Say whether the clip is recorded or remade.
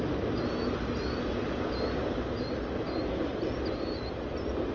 recorded